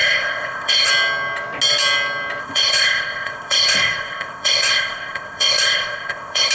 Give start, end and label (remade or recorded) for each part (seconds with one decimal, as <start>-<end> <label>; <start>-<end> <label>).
0.0-0.9 remade; 0.9-2.4 recorded; 2.4-6.5 remade